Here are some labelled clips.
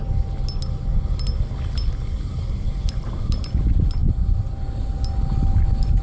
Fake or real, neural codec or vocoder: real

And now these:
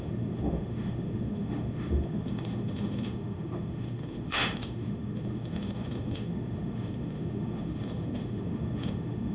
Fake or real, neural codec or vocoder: fake, autoencoder, DAC-VAE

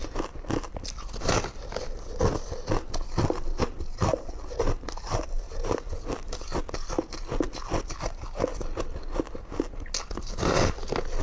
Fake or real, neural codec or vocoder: real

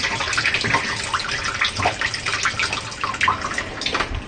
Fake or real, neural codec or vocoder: real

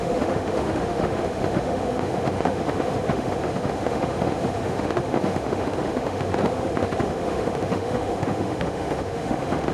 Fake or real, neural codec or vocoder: fake, autoencoder, DAC-VAE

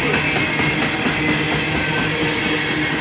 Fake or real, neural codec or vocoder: real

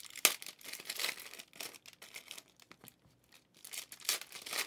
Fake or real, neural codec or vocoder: real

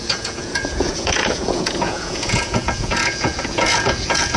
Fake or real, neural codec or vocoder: fake, vocoder, Vocos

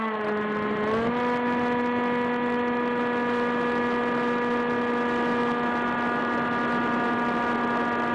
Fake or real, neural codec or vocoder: real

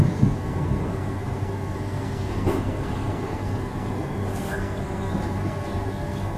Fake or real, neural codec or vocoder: fake, codec, SNAC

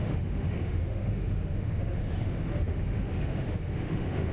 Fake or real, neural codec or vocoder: fake, autoencoder, DAC-VAE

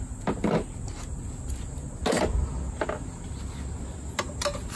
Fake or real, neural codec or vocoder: real